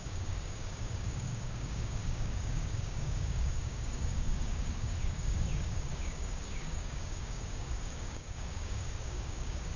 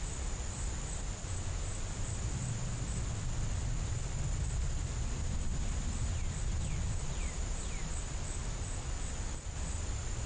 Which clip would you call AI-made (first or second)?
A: first